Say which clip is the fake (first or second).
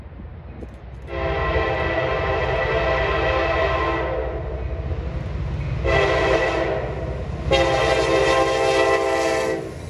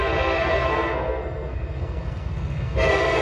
second